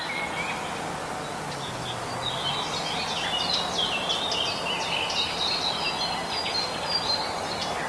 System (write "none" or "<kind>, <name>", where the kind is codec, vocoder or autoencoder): none